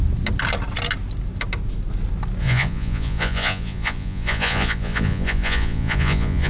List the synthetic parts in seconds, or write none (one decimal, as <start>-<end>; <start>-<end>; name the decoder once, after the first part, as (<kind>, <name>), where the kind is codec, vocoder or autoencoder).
2.4-6.5 (vocoder, Vocos)

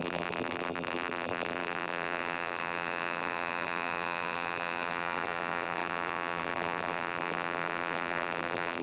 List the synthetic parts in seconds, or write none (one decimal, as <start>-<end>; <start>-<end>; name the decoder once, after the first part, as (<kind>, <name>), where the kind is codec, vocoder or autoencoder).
0.0-8.8 (vocoder, BigVGAN v2)

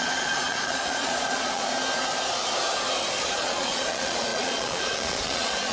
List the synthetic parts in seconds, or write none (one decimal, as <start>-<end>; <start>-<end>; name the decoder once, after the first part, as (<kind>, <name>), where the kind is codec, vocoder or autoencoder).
0.0-1.6 (vocoder, Vocos); 3.2-5.7

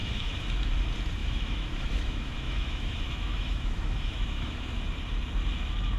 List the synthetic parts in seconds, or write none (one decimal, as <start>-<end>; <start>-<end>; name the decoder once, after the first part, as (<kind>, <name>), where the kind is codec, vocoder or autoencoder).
0.0-0.7 (autoencoder, DAC-VAE); 1.2-4.8

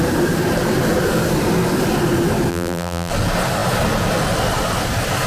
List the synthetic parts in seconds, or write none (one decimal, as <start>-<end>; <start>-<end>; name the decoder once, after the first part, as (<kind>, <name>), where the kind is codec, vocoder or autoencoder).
2.5-3.1 (vocoder, BigVGAN v2)

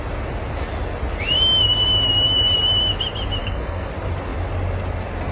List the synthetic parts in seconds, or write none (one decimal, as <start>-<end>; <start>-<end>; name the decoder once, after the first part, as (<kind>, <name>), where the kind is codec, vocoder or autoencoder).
3.4-3.9 (codec, SNAC)

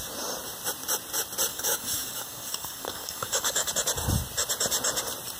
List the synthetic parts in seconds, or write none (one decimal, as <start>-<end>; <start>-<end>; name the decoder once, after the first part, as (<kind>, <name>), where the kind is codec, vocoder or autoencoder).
1.5-3.7 (codec, DAC)

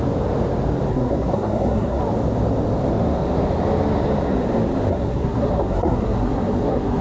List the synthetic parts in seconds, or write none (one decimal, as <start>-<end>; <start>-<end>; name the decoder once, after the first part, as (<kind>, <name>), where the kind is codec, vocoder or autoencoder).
0.9-2.0 (codec, SNAC); 4.9-7.0